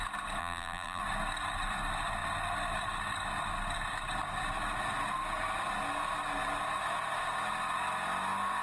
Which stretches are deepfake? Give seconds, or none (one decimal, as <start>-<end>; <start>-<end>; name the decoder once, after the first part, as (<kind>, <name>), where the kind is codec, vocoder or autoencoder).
0.4-1.0 (vocoder, BigVGAN v2)